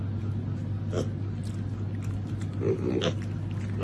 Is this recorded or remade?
recorded